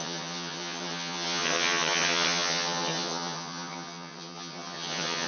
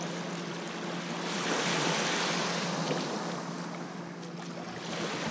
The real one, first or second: second